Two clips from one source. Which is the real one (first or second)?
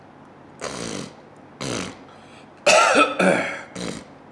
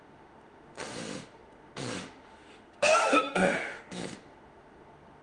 first